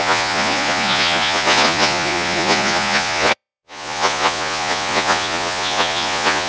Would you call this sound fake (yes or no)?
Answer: yes